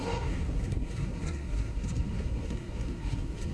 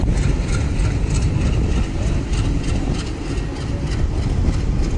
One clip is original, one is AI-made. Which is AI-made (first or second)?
first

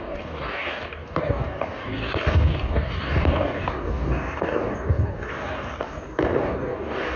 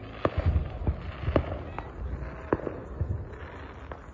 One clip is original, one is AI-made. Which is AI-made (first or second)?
first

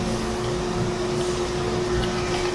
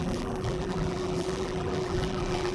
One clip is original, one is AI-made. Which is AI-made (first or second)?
second